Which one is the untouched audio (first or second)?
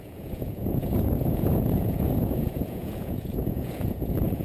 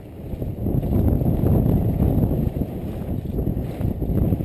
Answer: second